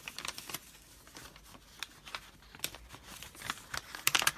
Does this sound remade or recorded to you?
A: recorded